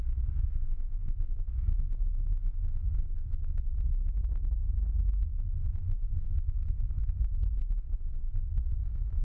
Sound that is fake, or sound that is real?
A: fake